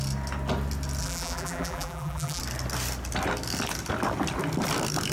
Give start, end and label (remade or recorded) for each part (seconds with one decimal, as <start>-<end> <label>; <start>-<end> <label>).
0.0-1.0 recorded; 1.0-2.4 remade; 2.4-5.1 recorded